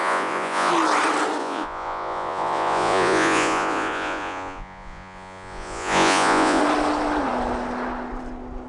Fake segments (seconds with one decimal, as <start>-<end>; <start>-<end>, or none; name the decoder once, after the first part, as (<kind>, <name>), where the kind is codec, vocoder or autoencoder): 0.0-0.7 (vocoder, Vocos); 1.4-6.6